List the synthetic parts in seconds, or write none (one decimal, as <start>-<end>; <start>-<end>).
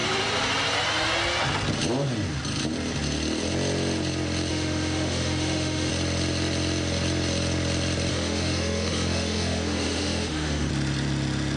4.5-5.9; 8.1-10.7